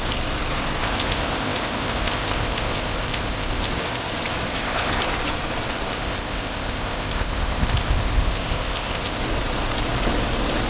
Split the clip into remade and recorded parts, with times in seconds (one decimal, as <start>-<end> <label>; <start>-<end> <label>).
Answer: 0.0-0.8 recorded; 0.8-3.7 remade; 3.7-4.5 recorded; 4.5-5.0 remade; 5.0-5.9 recorded; 5.9-9.2 remade; 9.2-10.7 recorded